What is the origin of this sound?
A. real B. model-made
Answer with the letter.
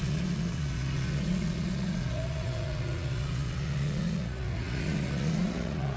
B